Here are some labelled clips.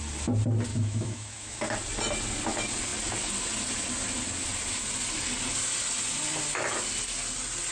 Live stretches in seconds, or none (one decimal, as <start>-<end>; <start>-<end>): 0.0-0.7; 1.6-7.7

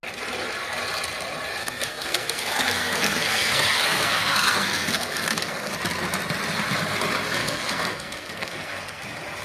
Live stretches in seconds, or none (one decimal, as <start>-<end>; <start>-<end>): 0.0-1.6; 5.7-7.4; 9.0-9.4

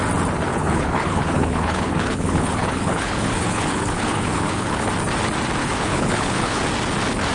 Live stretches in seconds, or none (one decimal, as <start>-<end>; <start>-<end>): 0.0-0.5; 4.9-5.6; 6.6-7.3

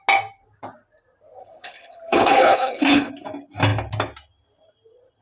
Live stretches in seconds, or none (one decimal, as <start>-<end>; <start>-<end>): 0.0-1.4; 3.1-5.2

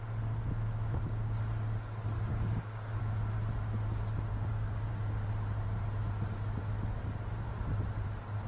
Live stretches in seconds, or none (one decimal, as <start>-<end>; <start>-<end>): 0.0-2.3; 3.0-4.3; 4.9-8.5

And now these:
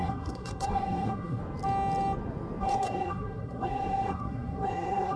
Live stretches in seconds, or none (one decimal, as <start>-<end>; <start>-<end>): 1.4-2.6